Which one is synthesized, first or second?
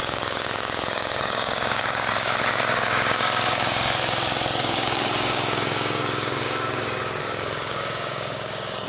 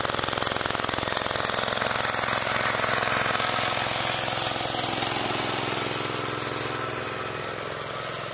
first